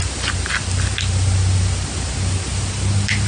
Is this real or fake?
real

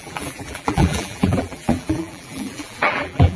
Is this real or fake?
fake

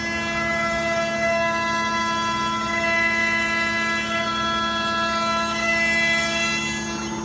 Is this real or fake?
real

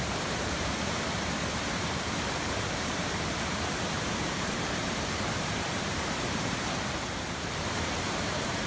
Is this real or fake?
fake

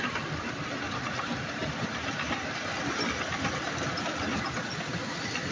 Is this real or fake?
real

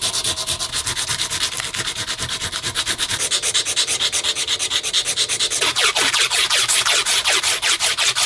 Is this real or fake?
real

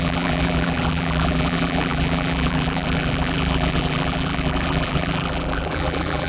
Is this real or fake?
fake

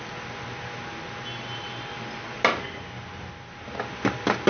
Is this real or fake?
real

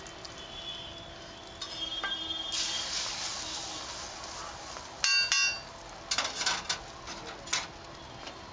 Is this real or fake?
real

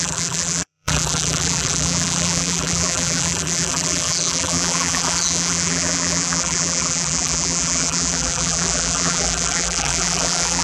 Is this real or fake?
fake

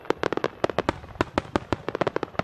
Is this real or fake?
real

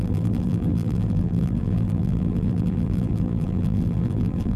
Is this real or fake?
fake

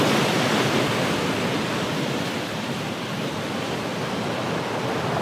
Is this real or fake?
real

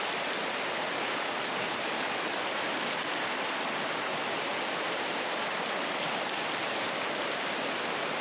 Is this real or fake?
real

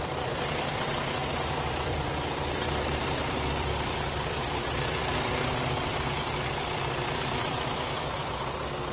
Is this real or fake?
fake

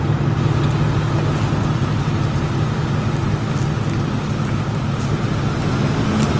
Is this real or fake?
real